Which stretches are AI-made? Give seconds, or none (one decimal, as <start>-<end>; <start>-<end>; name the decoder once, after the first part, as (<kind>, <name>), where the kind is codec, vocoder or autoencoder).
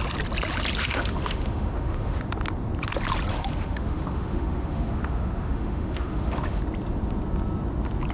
0.8-2.2 (autoencoder, DAC-VAE); 3.3-6.6